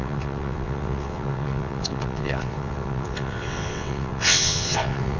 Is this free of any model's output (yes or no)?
no